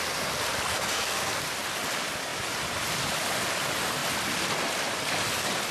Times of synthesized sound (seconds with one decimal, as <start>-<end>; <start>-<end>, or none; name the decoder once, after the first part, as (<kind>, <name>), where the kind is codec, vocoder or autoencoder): 0.7-1.4 (codec, SNAC)